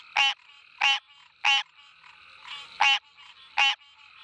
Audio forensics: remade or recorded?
recorded